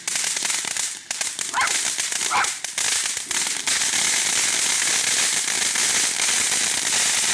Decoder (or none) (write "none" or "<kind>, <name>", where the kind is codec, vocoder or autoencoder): none